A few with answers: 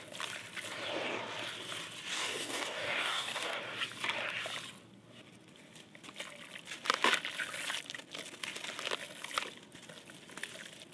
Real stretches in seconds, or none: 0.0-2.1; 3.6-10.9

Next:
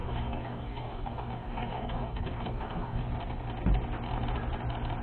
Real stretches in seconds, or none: 3.0-5.0

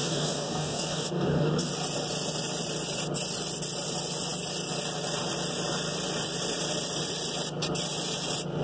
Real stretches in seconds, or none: 1.7-8.6

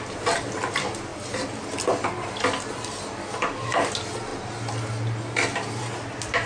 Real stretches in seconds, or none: 0.0-3.2; 3.9-6.5

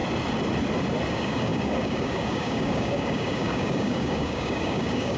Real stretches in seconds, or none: 0.0-1.1